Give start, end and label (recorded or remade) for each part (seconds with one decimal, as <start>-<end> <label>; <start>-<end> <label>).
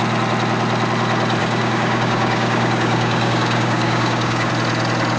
0.0-1.4 recorded; 1.4-4.5 remade; 4.5-5.2 recorded